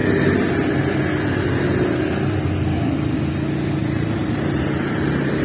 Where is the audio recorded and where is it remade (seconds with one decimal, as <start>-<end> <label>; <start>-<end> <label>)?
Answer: 0.0-3.8 recorded; 3.8-4.6 remade; 4.6-5.4 recorded